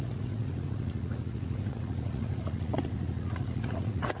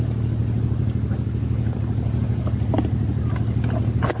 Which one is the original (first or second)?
second